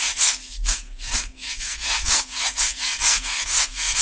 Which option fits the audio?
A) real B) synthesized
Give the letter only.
B